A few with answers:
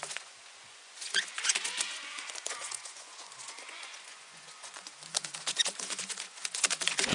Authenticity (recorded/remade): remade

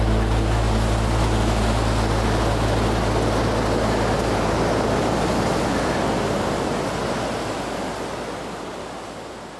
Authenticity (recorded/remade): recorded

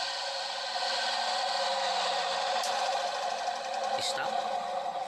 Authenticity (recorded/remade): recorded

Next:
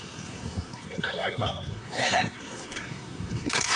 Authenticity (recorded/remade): remade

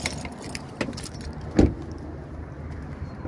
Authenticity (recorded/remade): recorded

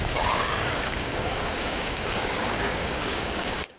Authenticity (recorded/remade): remade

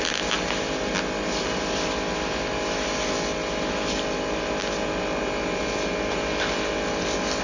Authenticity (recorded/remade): recorded